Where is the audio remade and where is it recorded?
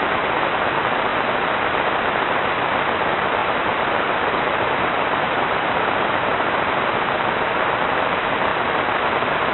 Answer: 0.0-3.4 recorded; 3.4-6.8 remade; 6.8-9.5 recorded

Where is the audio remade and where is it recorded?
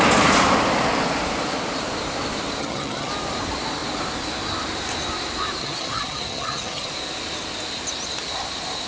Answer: 0.0-2.6 recorded; 2.6-3.1 remade; 3.1-5.6 recorded; 5.6-6.9 remade; 6.9-8.9 recorded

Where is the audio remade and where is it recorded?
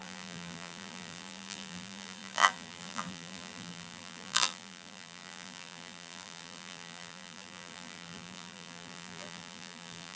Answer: 0.0-10.2 remade